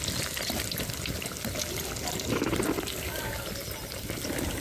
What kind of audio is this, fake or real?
real